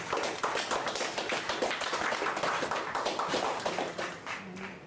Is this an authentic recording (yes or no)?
yes